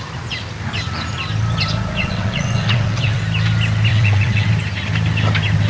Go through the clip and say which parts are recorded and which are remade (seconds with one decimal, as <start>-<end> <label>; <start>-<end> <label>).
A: 0.0-2.0 recorded; 2.0-3.2 remade; 3.2-3.9 recorded; 3.9-4.5 remade; 4.5-5.7 recorded